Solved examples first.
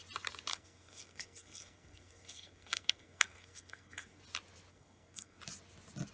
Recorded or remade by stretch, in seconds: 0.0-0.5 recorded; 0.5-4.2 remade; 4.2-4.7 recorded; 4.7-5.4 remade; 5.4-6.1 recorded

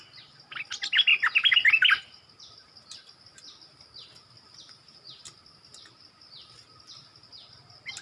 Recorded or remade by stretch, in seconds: 0.0-8.0 recorded

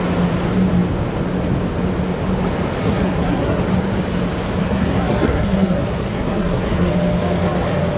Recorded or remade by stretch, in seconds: 0.0-2.8 recorded; 2.8-3.6 remade; 3.6-4.6 recorded; 4.6-6.9 remade; 6.9-8.0 recorded

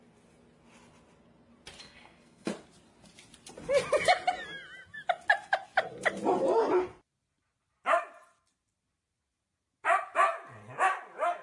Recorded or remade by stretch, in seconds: 0.0-1.8 recorded; 1.8-2.5 remade; 2.5-11.4 recorded

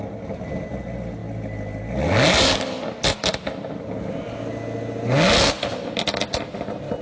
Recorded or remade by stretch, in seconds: 0.0-7.0 recorded

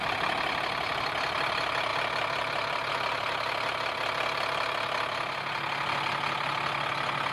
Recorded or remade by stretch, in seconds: 0.0-7.3 recorded

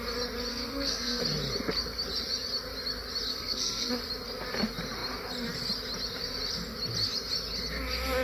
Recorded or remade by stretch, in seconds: 0.0-0.5 recorded; 0.5-1.2 remade; 1.2-3.3 recorded; 3.3-3.9 remade; 3.9-8.2 recorded

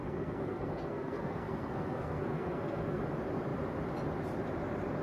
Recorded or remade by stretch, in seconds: 0.0-3.0 remade; 3.0-5.0 recorded